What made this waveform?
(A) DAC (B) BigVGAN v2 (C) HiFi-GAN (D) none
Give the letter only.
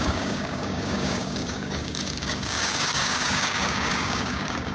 A